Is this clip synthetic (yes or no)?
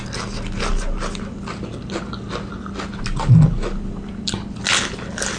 no